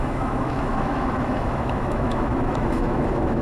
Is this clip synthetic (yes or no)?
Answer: yes